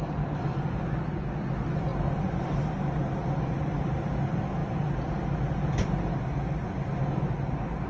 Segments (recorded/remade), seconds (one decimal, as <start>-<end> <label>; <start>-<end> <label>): 0.0-7.9 recorded